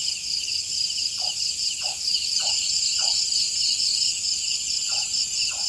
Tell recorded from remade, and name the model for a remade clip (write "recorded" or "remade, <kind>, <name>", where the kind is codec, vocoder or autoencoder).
recorded